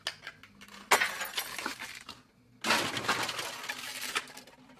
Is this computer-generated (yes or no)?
no